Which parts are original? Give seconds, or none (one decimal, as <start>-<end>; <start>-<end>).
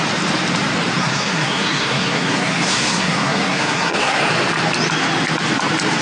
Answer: 0.0-1.0; 4.2-6.0